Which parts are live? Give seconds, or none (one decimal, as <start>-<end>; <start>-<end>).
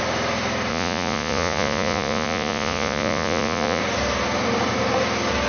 0.0-0.7; 3.8-5.5